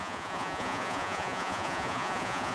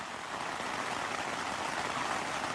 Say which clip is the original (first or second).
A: second